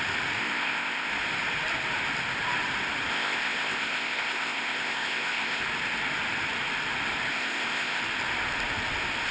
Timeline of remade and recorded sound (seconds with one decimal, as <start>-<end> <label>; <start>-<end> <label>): 0.0-0.4 recorded; 0.4-1.1 remade; 1.1-3.1 recorded; 3.1-5.6 remade; 5.6-7.3 recorded; 7.3-8.0 remade; 8.0-9.3 recorded